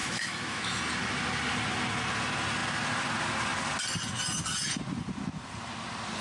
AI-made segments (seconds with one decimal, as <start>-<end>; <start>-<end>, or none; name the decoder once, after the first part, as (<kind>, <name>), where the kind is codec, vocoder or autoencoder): 0.0-0.8 (autoencoder, DAC-VAE)